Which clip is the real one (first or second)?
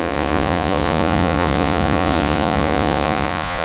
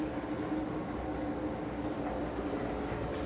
second